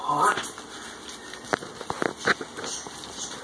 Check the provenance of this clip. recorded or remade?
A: recorded